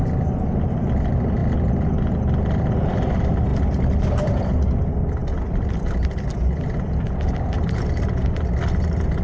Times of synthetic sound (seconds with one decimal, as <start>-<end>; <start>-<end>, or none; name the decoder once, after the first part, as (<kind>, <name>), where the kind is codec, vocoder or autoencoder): 3.5-4.5 (vocoder, BigVGAN v2)